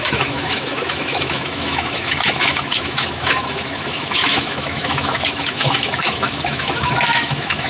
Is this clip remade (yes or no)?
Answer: yes